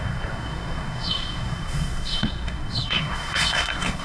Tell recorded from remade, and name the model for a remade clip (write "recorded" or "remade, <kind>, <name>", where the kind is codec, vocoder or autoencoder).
remade, codec, SNAC